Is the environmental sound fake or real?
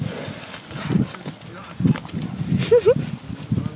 real